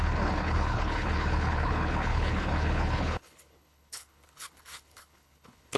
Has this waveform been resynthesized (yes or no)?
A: yes